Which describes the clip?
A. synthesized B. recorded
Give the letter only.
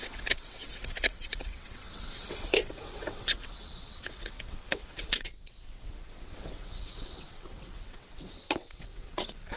A